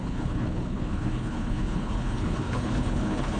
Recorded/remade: remade